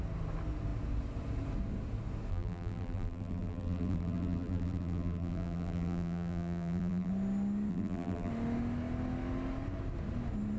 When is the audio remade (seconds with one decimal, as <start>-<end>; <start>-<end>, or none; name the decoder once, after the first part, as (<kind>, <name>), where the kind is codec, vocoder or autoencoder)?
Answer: 2.3-7.1 (vocoder, BigVGAN v2); 7.7-8.3